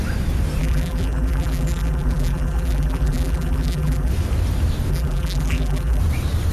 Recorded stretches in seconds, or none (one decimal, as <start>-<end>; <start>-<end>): 0.0-0.6; 4.1-4.9; 6.0-6.5